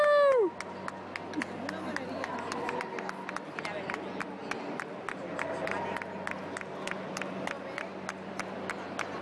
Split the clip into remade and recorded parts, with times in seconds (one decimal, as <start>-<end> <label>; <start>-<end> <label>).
0.0-9.2 recorded